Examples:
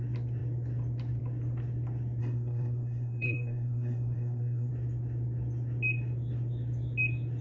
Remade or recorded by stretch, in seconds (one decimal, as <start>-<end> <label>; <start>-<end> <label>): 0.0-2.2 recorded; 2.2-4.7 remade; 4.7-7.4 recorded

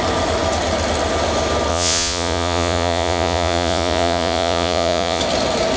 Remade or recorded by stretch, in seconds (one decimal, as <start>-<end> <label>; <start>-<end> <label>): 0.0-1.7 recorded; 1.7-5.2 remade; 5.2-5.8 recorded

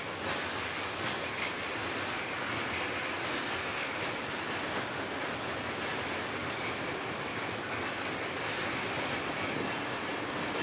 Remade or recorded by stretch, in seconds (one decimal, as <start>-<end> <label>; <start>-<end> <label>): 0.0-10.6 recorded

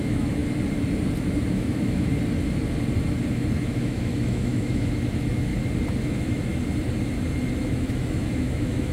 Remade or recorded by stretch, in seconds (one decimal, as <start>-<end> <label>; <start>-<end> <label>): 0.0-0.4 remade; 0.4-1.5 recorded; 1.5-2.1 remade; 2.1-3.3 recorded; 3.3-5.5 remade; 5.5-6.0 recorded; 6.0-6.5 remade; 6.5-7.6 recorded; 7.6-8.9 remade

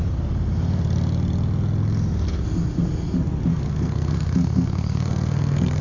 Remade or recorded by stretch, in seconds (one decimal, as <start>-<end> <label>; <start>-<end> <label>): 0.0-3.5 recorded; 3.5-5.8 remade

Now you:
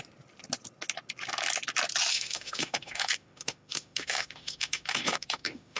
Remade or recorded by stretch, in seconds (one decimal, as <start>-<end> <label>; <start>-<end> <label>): 0.0-2.1 recorded; 2.1-5.8 remade

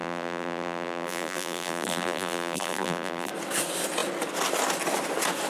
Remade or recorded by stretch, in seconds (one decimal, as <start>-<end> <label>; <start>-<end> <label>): 0.0-3.3 remade; 3.3-5.5 recorded